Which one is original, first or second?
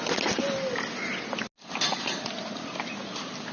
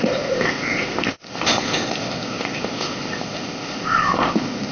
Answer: first